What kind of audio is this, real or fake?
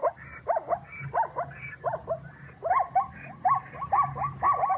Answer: real